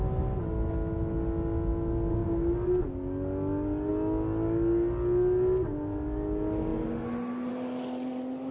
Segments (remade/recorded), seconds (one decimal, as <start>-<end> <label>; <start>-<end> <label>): 0.0-8.5 recorded